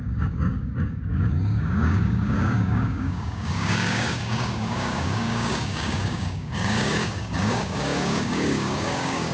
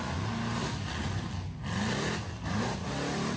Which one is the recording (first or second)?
second